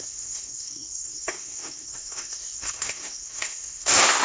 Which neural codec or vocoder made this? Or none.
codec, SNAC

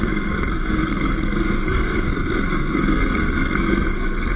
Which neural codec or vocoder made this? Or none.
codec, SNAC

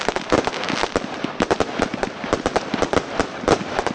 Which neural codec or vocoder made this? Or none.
none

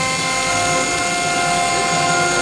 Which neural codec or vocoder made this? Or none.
none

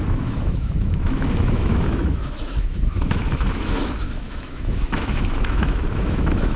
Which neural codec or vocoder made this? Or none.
autoencoder, DAC-VAE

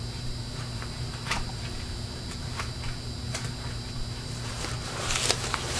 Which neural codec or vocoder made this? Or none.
vocoder, BigVGAN v2